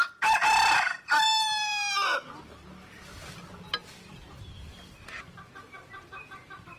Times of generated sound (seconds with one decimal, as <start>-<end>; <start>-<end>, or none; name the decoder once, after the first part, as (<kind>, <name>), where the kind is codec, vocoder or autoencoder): 3.8-4.9 (vocoder, BigVGAN v2)